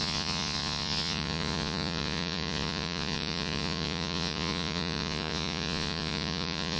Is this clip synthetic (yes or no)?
yes